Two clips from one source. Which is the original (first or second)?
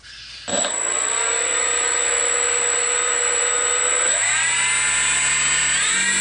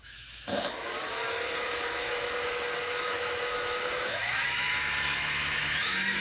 first